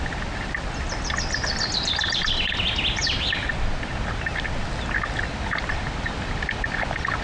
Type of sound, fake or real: real